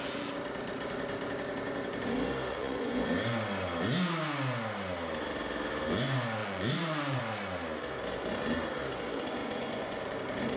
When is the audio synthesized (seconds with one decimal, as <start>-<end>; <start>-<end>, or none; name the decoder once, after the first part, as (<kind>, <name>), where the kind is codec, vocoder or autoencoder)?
2.5-3.1 (vocoder, Vocos); 6.4-7.2; 9.4-10.0